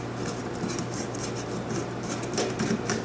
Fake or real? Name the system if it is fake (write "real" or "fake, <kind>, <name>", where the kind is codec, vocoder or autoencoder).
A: real